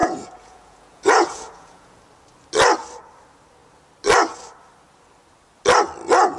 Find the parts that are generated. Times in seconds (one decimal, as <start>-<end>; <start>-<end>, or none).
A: 0.0-2.0